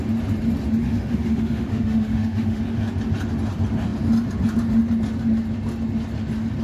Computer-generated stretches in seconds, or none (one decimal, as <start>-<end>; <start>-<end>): 0.8-2.6